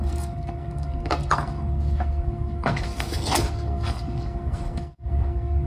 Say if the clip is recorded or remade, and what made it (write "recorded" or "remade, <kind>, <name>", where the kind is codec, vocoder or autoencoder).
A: remade, codec, SNAC